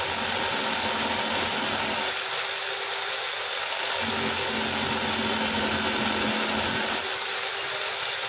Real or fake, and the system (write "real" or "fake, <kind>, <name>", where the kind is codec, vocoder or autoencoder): real